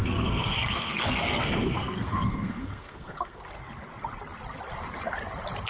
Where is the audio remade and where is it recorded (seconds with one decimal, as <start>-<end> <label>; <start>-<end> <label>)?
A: 0.0-3.4 remade; 3.4-5.7 recorded